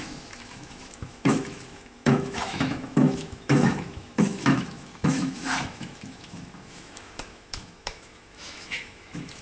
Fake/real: fake